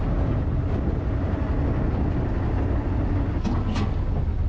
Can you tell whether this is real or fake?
real